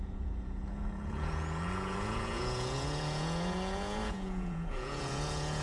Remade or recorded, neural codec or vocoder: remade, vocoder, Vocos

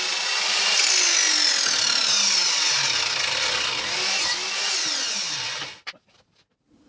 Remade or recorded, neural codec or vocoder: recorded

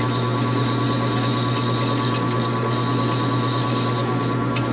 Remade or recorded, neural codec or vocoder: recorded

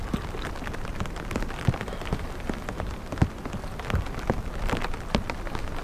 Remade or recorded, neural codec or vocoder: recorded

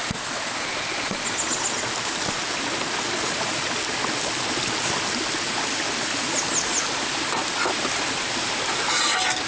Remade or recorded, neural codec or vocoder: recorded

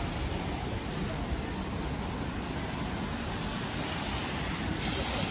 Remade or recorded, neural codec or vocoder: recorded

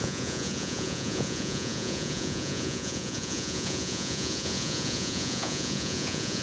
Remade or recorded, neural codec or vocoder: remade, vocoder, Vocos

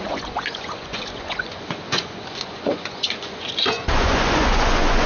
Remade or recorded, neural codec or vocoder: remade, vocoder, Vocos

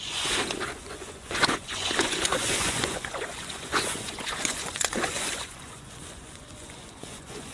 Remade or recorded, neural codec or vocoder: remade, vocoder, Vocos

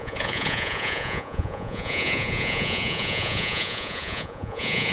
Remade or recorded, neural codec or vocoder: remade, vocoder, Vocos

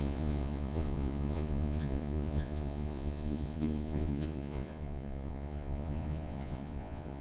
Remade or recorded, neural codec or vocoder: remade, vocoder, Vocos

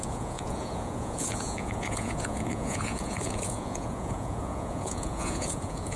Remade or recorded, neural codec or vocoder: remade, vocoder, Vocos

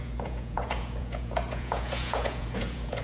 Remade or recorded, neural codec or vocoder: remade, vocoder, Vocos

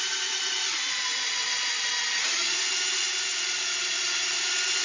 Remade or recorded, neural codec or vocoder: recorded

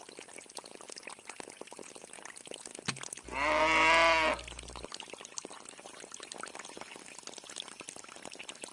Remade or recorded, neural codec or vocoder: recorded